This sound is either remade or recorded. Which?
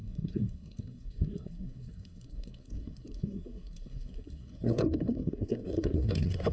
remade